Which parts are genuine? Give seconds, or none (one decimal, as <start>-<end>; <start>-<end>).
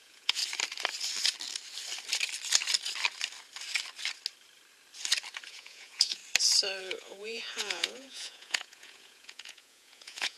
0.4-5.5; 6.2-6.8